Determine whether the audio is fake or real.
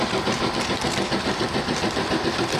real